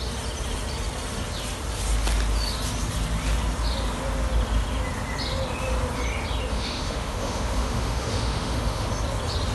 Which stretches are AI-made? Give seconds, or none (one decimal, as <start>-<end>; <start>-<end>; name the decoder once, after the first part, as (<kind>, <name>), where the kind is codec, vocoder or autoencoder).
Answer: 6.5-8.9 (autoencoder, DAC-VAE)